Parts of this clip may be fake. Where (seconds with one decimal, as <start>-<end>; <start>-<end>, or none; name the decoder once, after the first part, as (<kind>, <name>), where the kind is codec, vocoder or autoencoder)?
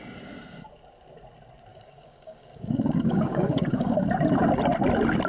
1.7-4.0 (codec, DAC)